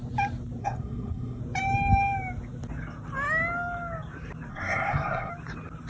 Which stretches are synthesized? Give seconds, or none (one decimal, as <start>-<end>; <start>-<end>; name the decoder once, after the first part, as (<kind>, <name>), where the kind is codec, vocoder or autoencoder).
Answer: 0.6-1.4 (codec, SNAC); 4.5-5.3